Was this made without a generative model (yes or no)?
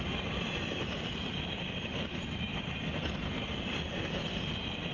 yes